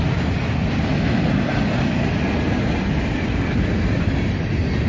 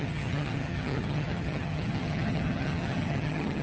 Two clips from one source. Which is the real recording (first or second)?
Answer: first